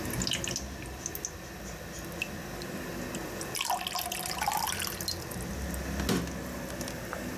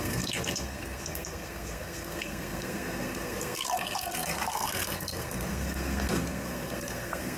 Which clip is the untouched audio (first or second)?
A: first